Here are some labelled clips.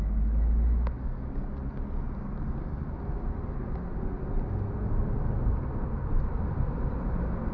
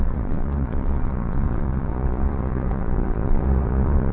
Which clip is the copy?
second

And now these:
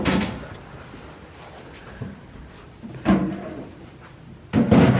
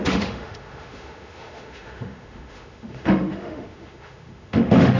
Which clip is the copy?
second